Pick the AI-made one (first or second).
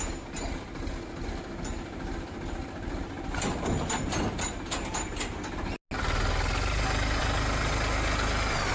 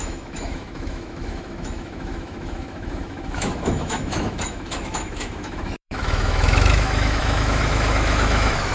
second